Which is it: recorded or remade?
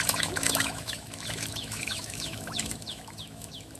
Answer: remade